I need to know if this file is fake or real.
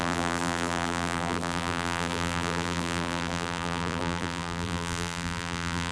fake